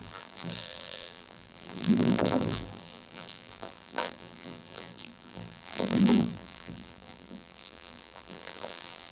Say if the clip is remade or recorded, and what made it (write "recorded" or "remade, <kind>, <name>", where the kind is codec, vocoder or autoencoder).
remade, vocoder, BigVGAN v2